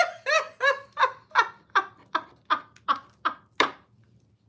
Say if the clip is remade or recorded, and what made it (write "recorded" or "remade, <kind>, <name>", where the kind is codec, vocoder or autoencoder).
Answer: recorded